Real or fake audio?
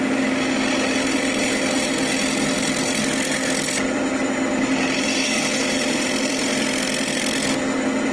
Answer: real